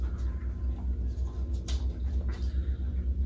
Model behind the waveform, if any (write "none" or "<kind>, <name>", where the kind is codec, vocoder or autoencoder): none